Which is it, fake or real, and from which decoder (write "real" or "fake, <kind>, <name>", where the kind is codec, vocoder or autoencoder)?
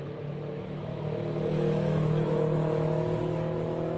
fake, autoencoder, DAC-VAE